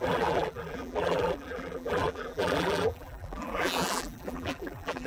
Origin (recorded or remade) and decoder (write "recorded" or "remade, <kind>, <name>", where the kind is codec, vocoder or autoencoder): remade, vocoder, BigVGAN v2